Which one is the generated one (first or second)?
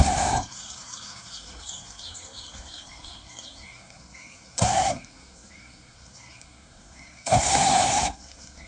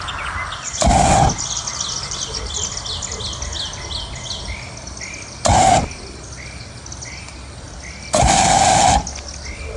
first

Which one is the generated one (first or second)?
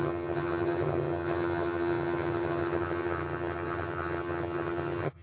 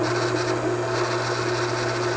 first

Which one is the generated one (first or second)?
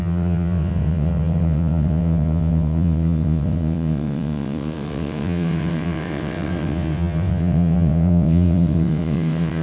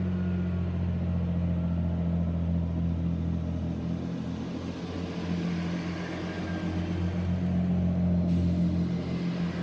first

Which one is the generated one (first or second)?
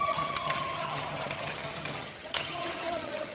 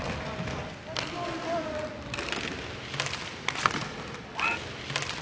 first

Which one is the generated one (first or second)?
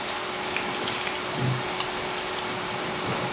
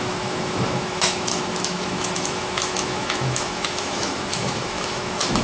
second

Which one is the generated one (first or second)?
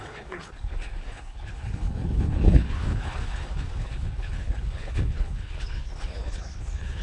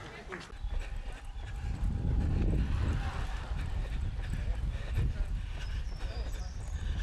first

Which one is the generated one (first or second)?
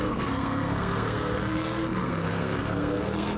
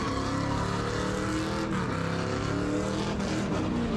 first